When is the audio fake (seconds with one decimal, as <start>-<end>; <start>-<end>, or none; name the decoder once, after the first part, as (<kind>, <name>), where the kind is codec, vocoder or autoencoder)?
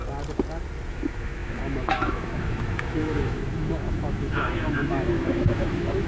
0.9-6.1 (autoencoder, DAC-VAE)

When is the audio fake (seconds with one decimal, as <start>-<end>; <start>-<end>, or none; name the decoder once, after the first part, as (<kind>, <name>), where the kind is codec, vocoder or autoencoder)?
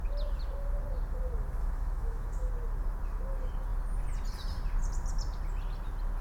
1.6-2.5 (autoencoder, DAC-VAE)